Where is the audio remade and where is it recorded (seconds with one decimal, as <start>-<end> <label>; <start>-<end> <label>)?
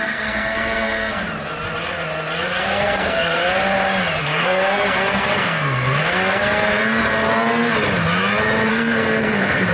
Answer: 0.0-1.2 remade; 1.2-2.4 recorded; 2.4-3.4 remade; 3.4-4.2 recorded; 4.2-6.6 remade; 6.6-8.7 recorded; 8.7-9.7 remade